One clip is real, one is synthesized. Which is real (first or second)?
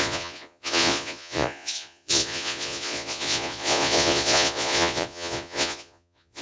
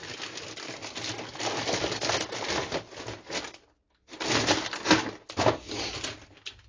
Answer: second